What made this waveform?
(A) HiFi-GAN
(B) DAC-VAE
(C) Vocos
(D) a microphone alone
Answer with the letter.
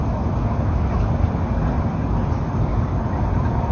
D